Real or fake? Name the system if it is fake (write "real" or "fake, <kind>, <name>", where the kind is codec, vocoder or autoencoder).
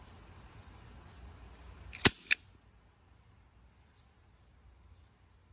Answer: real